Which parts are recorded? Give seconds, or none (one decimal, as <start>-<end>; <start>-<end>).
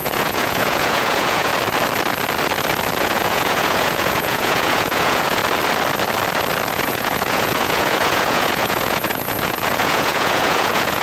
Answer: 1.5-3.0; 5.4-6.7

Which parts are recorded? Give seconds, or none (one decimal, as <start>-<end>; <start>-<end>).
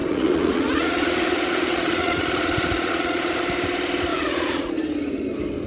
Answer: 3.4-4.1; 4.7-5.7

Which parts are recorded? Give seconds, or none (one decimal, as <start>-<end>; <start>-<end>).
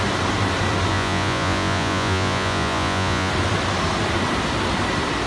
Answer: 0.0-0.9; 3.3-5.3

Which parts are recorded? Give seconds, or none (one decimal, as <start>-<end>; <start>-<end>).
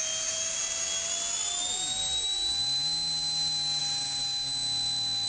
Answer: 0.0-5.3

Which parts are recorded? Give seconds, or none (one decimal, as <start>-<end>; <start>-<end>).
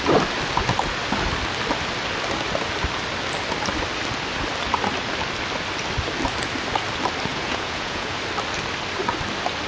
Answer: 0.0-7.3; 8.2-9.7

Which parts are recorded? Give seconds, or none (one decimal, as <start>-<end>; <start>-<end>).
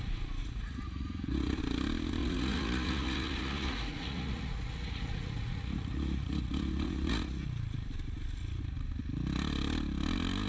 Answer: 0.0-0.4; 1.6-2.2; 7.4-10.5